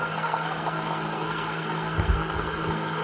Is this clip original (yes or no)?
no